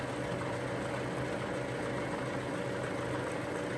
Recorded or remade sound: recorded